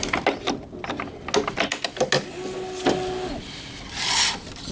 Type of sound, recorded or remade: recorded